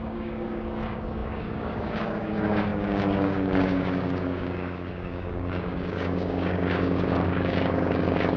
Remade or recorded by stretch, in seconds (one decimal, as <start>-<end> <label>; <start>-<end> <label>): 0.0-8.4 remade